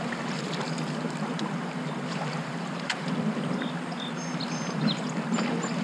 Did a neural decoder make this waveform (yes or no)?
yes